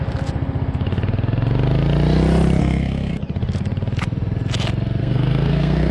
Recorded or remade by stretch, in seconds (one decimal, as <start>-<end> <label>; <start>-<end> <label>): 0.0-2.6 recorded; 2.6-3.1 remade; 3.1-5.0 recorded; 5.0-5.9 remade